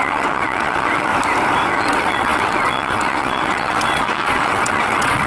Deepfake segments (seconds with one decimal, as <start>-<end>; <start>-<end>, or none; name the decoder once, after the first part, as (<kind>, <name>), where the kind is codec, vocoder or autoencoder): 0.0-1.1 (vocoder, WaveNeXt); 1.7-5.3